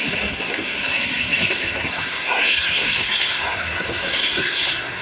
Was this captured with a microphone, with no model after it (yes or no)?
no